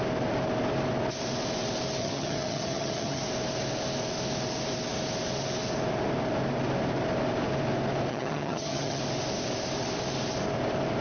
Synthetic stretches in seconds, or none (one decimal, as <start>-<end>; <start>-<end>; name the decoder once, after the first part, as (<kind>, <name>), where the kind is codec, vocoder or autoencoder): 2.0-3.2 (vocoder, HiFi-GAN); 8.1-9.0